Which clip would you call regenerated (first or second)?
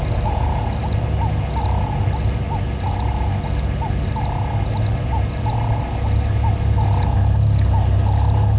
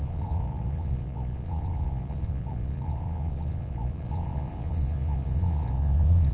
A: second